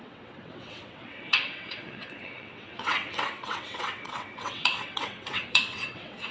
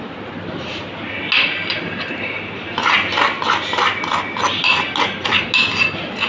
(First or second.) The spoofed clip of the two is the first